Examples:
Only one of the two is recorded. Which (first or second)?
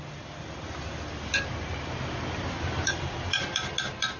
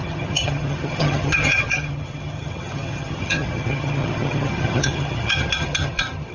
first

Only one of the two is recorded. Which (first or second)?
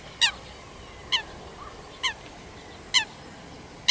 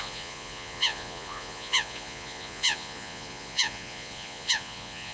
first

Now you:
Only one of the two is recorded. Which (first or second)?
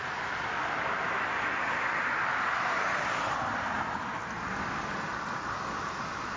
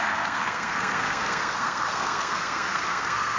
first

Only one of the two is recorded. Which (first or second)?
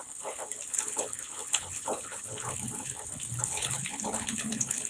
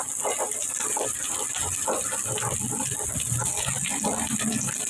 second